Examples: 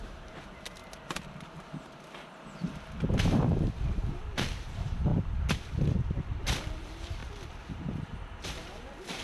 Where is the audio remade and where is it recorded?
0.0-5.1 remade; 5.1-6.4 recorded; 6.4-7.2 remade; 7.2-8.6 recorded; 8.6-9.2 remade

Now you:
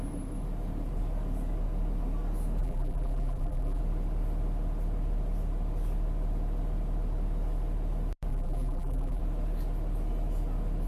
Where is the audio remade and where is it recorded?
0.0-2.6 recorded; 2.6-3.8 remade; 3.8-8.3 recorded; 8.3-9.2 remade; 9.2-10.9 recorded

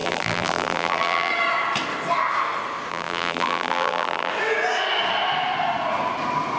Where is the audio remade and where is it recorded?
0.0-1.3 remade; 1.3-2.9 recorded; 2.9-4.3 remade; 4.3-6.6 recorded